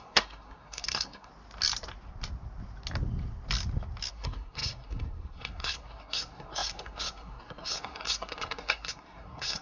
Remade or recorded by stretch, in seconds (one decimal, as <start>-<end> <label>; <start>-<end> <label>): 0.0-1.3 remade; 1.3-4.1 recorded; 4.1-9.6 remade